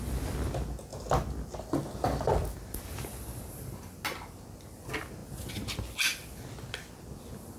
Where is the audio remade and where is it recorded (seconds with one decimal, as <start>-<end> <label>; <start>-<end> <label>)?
0.0-7.6 recorded